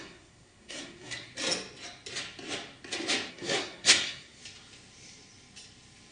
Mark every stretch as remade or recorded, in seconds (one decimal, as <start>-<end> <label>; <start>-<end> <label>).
0.0-1.3 remade; 1.3-3.3 recorded; 3.3-4.4 remade; 4.4-6.1 recorded